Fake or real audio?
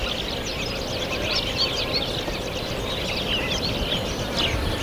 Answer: real